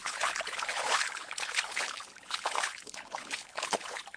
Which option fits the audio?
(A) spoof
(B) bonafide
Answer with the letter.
A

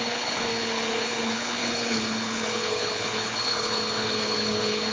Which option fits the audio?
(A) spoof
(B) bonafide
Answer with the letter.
A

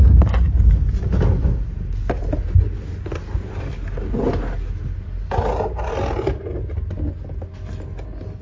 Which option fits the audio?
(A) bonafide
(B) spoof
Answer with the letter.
A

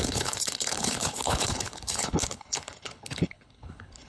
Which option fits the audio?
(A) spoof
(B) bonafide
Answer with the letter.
A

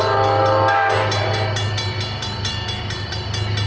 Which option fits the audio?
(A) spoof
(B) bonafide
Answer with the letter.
B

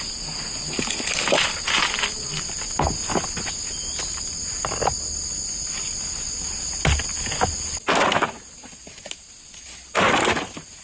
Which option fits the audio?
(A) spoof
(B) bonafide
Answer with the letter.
B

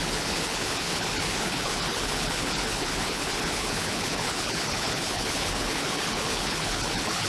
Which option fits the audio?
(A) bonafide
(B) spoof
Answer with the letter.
B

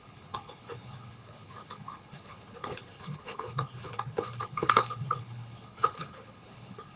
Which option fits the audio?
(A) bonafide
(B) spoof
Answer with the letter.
B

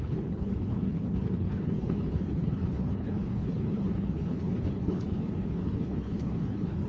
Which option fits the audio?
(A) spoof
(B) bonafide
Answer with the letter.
A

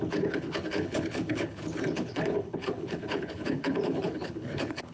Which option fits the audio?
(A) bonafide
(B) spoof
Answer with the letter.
B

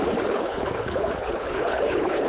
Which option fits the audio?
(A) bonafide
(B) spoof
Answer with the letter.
B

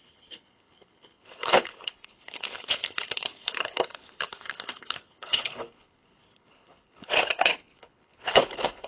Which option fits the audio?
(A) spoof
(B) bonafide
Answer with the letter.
A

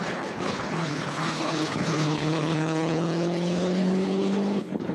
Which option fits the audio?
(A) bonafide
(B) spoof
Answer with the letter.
B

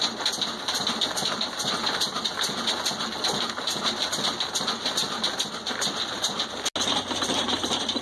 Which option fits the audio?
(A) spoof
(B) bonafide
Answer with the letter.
B